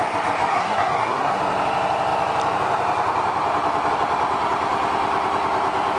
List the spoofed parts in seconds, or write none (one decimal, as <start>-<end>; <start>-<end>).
0.5-1.4